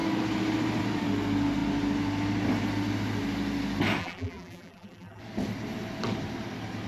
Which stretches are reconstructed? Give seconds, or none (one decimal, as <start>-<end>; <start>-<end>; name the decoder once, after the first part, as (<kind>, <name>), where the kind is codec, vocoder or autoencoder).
4.0-5.2 (vocoder, BigVGAN v2)